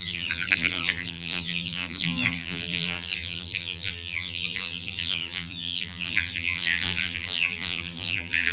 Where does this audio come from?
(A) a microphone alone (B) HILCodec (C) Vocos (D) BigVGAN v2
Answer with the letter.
D